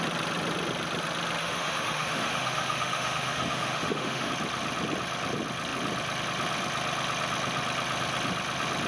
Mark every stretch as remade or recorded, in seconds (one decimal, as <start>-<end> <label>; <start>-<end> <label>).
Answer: 0.0-1.4 recorded; 1.4-4.3 remade; 4.3-8.9 recorded